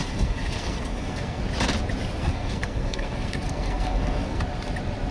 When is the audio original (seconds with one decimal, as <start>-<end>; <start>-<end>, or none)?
1.4-2.2; 4.4-5.1